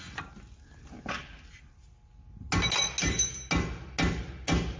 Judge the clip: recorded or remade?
recorded